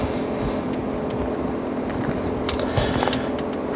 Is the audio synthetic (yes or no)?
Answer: no